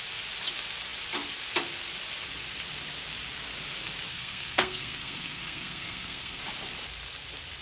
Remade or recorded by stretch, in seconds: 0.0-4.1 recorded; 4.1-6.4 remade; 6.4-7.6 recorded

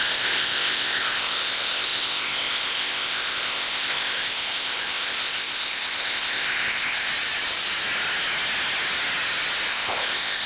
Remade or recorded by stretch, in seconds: 0.0-7.1 remade; 7.1-9.7 recorded; 9.7-10.5 remade